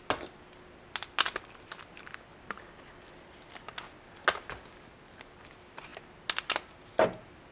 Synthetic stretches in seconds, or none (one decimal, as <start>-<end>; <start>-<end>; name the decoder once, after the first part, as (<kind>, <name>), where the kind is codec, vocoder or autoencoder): none